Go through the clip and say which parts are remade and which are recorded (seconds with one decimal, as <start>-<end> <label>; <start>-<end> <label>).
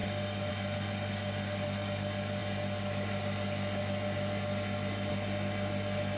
0.0-6.2 recorded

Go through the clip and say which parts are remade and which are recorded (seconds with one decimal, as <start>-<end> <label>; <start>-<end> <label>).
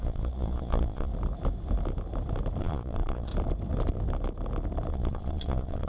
0.0-1.1 remade; 1.1-2.6 recorded; 2.6-3.3 remade; 3.3-4.9 recorded; 4.9-5.9 remade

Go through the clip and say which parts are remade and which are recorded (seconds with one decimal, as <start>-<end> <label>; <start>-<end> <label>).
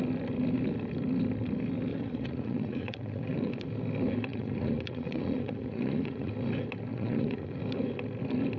0.0-1.9 recorded; 1.9-3.5 remade; 3.5-4.3 recorded; 4.3-6.3 remade; 6.3-6.9 recorded; 6.9-7.6 remade; 7.6-8.6 recorded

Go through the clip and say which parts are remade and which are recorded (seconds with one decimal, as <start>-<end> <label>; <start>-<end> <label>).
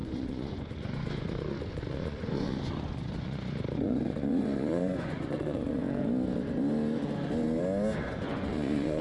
0.0-5.8 remade; 5.8-8.0 recorded; 8.0-9.0 remade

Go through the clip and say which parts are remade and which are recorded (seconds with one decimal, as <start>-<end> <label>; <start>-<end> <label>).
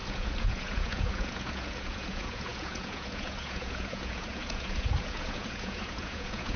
0.0-6.6 remade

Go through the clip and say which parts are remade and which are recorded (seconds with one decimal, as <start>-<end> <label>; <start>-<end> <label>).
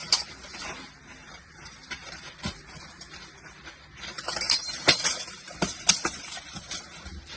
0.0-7.4 recorded